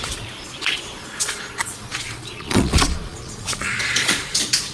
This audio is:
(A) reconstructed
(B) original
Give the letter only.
A